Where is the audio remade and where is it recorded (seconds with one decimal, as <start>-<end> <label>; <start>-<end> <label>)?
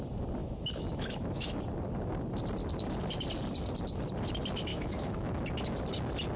0.0-0.4 recorded; 0.4-1.6 remade; 1.6-4.7 recorded; 4.7-5.3 remade; 5.3-6.4 recorded